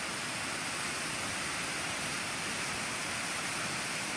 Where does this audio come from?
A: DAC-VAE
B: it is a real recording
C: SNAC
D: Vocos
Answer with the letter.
B